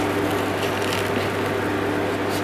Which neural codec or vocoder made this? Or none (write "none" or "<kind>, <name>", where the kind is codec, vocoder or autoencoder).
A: none